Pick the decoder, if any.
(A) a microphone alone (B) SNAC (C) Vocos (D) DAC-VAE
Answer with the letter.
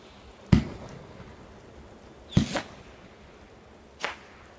A